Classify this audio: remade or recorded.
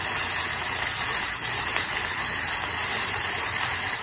remade